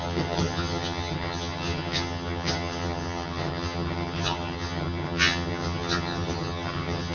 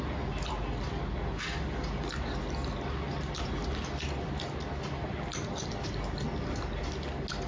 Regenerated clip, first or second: first